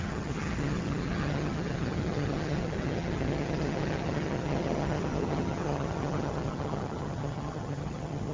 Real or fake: fake